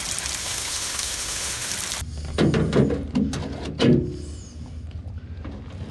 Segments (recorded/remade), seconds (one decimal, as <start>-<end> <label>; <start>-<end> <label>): 0.0-0.4 recorded; 0.4-1.7 remade; 1.7-5.9 recorded